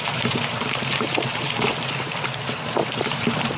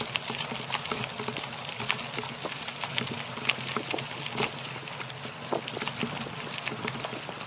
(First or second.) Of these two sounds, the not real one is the first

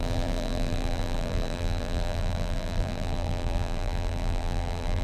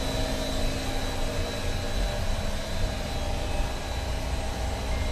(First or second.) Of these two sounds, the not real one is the first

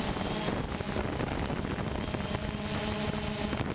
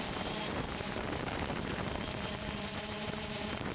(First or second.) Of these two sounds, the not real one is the second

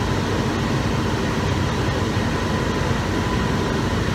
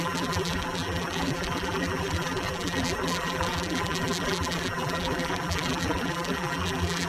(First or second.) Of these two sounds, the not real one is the second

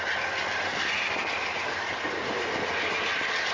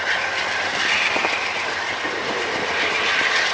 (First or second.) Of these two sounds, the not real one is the second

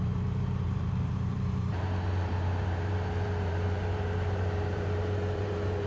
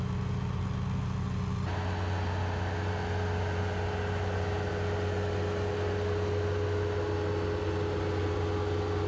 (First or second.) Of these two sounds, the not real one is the first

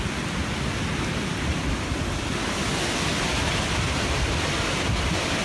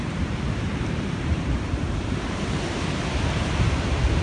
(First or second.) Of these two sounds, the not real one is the second